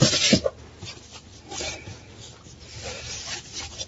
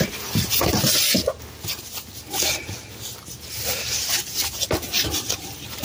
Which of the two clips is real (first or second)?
first